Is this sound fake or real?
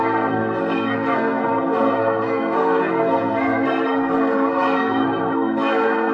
fake